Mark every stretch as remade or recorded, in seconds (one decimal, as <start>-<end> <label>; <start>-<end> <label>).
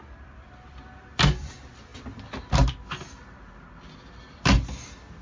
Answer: 0.0-5.2 recorded